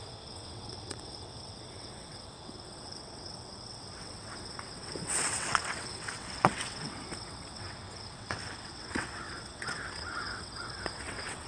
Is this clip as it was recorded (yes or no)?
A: no